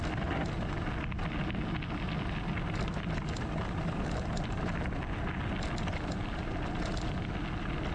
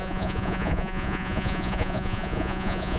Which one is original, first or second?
first